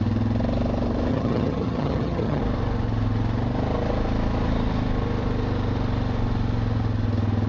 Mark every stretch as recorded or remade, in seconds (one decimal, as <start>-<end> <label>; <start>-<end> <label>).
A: 0.0-1.1 recorded; 1.1-2.4 remade; 2.4-7.5 recorded